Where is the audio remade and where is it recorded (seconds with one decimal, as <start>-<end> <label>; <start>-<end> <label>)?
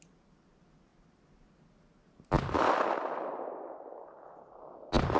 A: 0.0-5.2 recorded